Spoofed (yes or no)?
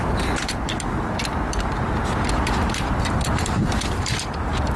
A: no